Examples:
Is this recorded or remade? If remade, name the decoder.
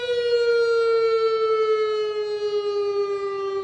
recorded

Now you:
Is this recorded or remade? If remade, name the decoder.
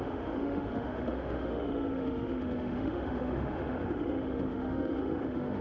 remade, autoencoder, DAC-VAE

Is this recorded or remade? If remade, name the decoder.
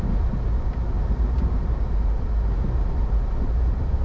recorded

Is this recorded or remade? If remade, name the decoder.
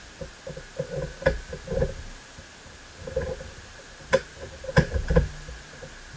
recorded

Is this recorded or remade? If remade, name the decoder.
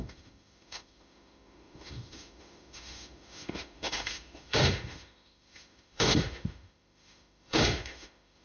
remade, autoencoder, DAC-VAE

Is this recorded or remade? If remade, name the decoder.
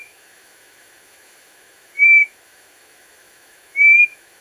remade, autoencoder, DAC-VAE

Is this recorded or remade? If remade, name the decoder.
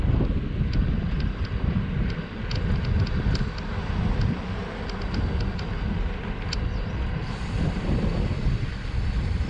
recorded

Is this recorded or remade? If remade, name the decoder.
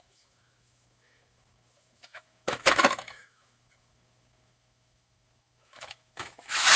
remade, autoencoder, DAC-VAE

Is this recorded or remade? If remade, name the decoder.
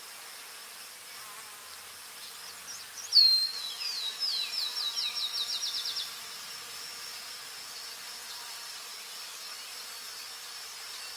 recorded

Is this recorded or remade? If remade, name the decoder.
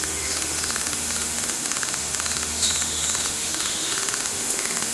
remade, autoencoder, DAC-VAE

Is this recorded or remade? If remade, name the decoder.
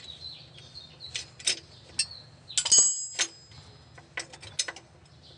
recorded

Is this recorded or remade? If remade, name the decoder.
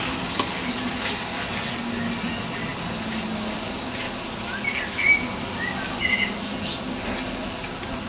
recorded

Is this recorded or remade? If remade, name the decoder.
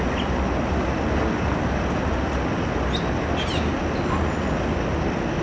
recorded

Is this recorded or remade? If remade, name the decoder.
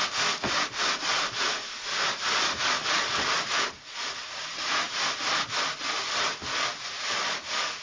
recorded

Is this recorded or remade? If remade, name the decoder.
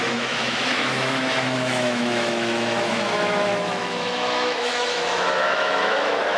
remade, autoencoder, DAC-VAE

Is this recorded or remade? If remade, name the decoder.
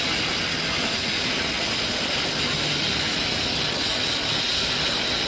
recorded